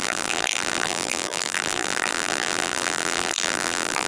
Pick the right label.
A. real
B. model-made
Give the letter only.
B